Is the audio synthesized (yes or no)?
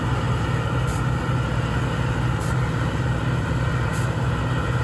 no